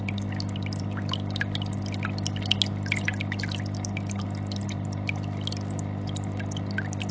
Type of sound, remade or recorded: recorded